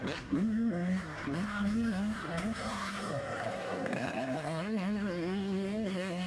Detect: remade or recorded remade